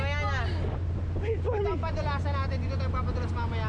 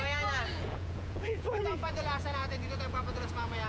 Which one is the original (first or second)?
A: first